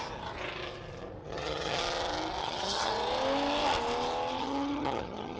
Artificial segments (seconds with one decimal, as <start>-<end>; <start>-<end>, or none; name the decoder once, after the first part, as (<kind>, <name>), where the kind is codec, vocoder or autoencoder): 1.2-1.8 (vocoder, HiFi-GAN); 2.4-2.9; 4.4-5.4